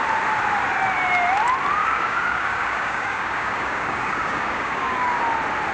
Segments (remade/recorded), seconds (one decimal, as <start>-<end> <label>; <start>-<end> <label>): 0.0-1.8 recorded; 1.8-5.2 remade; 5.2-5.7 recorded